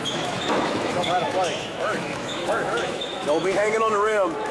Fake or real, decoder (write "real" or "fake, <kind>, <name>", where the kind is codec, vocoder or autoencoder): fake, autoencoder, DAC-VAE